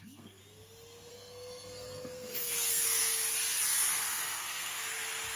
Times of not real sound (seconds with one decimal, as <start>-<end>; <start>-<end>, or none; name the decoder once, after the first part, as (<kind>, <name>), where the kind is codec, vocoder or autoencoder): 0.0-0.4 (codec, SNAC); 1.1-3.0; 3.9-4.8